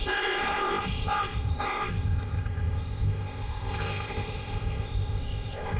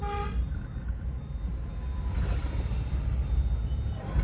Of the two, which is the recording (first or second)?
second